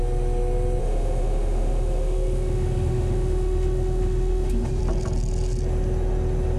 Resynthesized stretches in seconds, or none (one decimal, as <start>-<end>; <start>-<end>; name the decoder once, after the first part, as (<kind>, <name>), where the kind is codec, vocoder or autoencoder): 0.8-4.8 (autoencoder, DAC-VAE)